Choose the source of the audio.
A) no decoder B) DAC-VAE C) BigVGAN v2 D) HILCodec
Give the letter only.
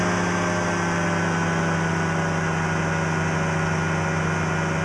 A